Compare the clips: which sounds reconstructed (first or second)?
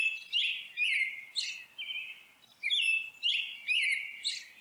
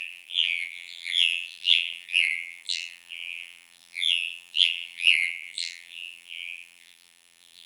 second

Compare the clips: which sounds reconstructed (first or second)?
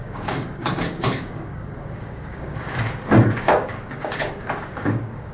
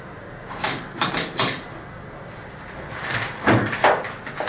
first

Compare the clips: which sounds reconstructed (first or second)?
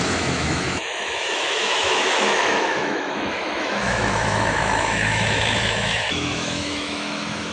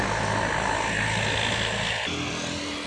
first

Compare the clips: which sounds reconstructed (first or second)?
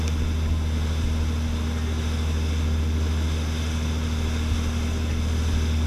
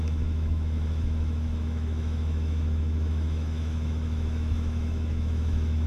second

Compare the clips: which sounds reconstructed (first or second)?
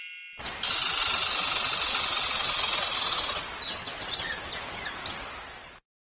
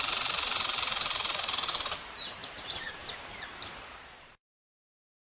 second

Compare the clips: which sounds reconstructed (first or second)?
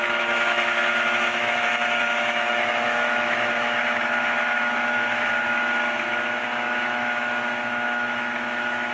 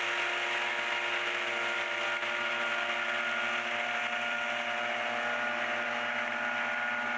first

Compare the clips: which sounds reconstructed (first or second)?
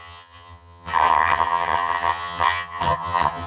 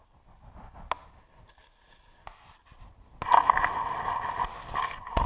first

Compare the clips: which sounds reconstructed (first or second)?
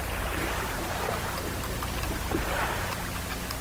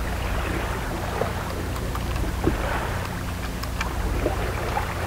first